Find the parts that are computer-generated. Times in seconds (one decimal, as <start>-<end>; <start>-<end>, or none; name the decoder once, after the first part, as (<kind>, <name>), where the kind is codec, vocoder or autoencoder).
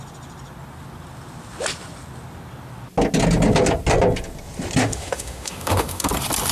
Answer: 4.8-6.1 (autoencoder, DAC-VAE)